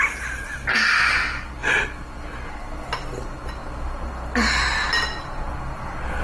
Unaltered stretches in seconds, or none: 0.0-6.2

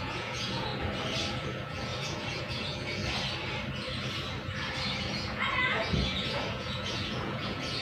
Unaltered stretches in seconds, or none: 0.7-1.3; 3.0-5.0

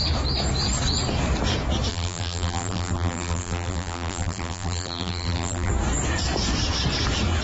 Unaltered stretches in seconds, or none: 0.0-1.9; 5.7-7.4

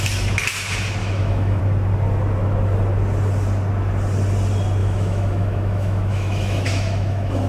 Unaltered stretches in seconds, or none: 0.0-1.0; 1.6-4.8